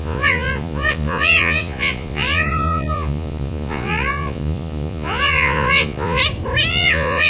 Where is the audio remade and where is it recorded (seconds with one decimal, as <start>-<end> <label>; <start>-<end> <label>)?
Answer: 0.0-6.2 remade; 6.2-6.7 recorded; 6.7-7.3 remade